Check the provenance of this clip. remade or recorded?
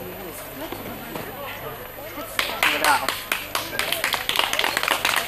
recorded